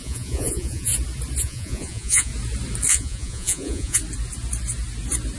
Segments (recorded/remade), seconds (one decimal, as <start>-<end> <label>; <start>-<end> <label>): 0.0-0.9 remade; 0.9-1.4 recorded; 1.4-2.3 remade; 2.3-2.9 recorded; 2.9-4.0 remade; 4.0-5.4 recorded